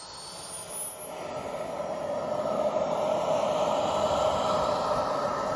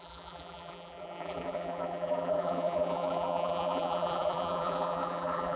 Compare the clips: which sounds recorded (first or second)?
first